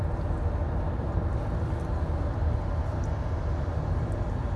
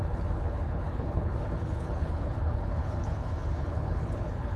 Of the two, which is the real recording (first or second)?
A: first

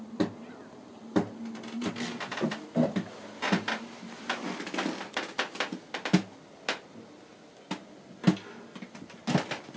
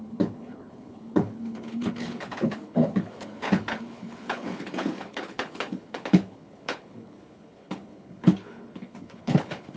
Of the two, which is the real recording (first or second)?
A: first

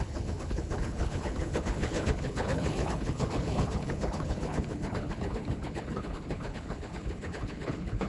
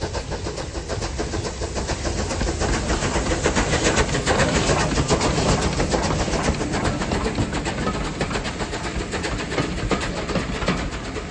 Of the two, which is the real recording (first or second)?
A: second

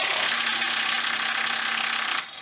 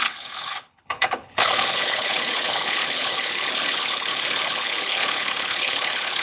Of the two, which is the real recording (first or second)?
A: first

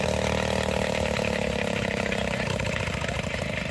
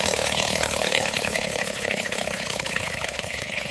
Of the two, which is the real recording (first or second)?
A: first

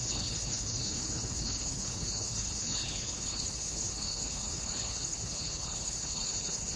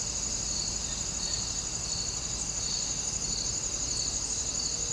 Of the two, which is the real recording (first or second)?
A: second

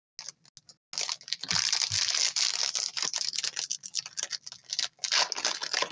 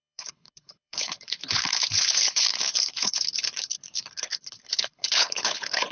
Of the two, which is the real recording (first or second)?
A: first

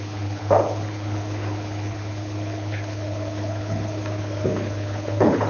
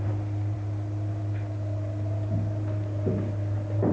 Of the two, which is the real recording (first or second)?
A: second